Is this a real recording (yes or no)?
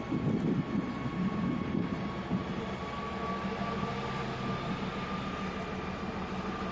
yes